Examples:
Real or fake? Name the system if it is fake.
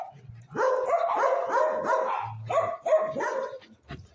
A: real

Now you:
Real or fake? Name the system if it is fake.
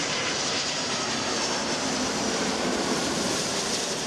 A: fake, vocoder, BigVGAN v2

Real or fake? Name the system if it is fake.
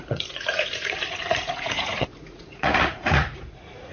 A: fake, vocoder, Vocos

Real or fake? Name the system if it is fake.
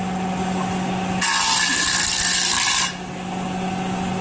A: real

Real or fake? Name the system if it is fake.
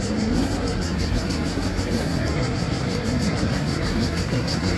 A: fake, codec, SNAC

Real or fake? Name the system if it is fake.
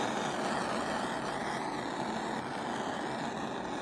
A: real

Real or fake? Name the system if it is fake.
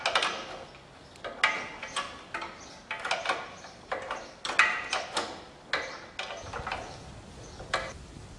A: real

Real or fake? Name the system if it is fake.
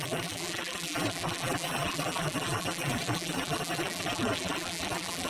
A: fake, vocoder, BigVGAN v2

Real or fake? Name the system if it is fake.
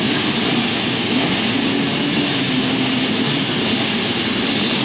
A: real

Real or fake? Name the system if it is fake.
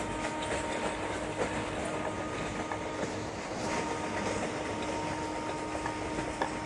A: real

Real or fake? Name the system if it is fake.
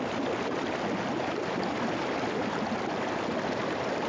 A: real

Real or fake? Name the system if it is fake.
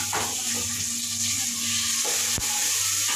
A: real